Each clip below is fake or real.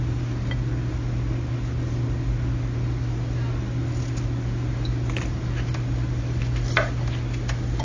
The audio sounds real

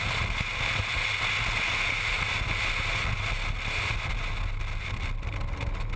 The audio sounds real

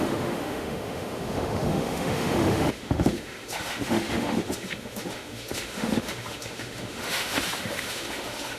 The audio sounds fake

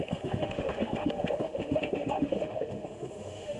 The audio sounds fake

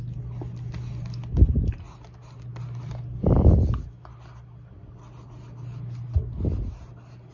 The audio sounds real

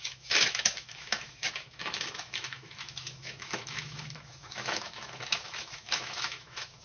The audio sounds fake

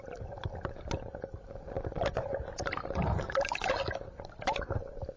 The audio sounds real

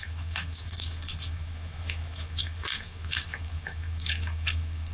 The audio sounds fake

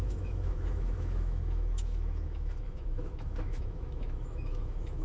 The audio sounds fake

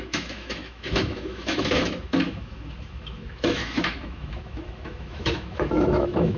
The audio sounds fake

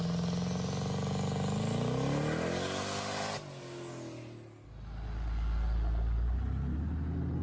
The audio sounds real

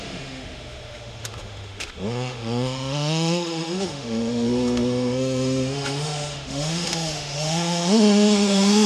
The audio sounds fake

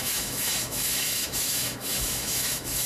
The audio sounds fake